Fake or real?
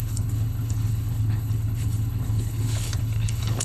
fake